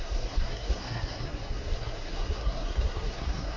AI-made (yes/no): yes